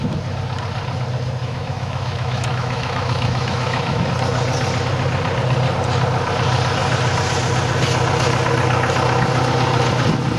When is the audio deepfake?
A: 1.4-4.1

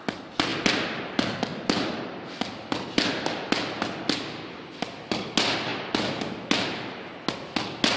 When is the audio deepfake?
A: none

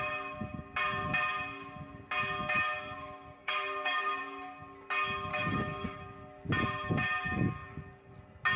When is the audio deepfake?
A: 3.4-4.2; 5.3-6.0

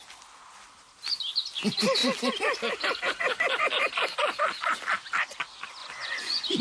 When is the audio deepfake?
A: 5.8-6.6

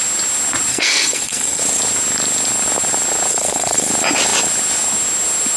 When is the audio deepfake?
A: 0.7-1.6; 3.3-3.9

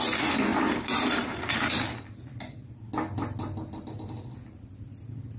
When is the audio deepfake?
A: 0.5-1.7